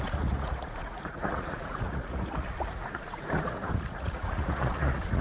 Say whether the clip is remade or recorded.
remade